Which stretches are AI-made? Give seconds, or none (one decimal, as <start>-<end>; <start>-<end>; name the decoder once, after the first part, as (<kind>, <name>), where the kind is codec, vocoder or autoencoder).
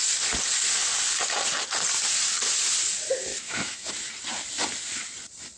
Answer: 3.3-3.9 (autoencoder, DAC-VAE)